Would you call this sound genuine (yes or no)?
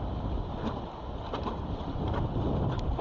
yes